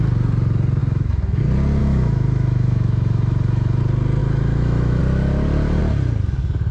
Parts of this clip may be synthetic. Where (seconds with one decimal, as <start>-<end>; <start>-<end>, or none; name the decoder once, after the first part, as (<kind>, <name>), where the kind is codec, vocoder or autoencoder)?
0.8-1.4 (autoencoder, DAC-VAE); 1.8-3.8; 4.2-5.0